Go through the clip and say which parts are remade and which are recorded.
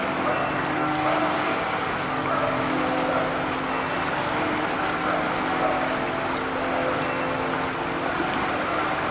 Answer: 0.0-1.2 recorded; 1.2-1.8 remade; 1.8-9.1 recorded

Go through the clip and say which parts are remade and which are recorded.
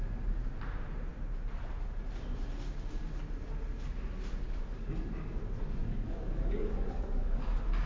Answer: 0.0-5.8 recorded; 5.8-7.5 remade; 7.5-7.9 recorded